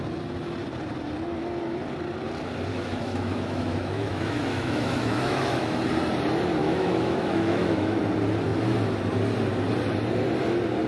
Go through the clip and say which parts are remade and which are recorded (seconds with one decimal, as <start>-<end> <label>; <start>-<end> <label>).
0.0-2.7 recorded; 2.7-5.8 remade; 5.8-6.6 recorded; 6.6-8.0 remade; 8.0-10.9 recorded